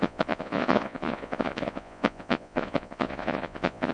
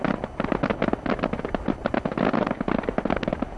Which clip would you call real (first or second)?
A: second